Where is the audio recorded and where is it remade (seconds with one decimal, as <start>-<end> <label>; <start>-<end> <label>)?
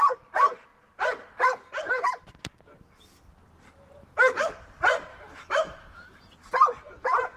0.0-4.0 recorded; 4.0-4.5 remade; 4.5-5.1 recorded; 5.1-6.2 remade; 6.2-7.4 recorded